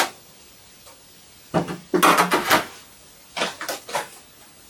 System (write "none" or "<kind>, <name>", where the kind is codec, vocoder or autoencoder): none